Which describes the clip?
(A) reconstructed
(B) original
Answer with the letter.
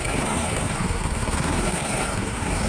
A